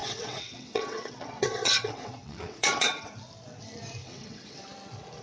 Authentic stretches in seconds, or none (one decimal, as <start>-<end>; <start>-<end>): 3.1-4.0; 4.6-5.2